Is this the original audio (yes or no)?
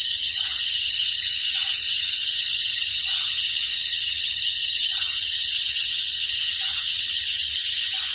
no